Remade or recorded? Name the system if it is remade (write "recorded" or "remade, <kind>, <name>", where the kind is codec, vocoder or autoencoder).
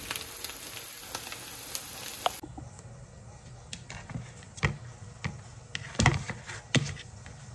recorded